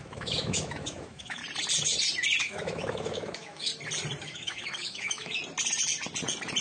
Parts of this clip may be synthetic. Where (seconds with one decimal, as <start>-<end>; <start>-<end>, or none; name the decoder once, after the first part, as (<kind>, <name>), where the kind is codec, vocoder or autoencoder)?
0.0-1.4 (autoencoder, DAC-VAE); 2.4-3.7; 4.2-5.4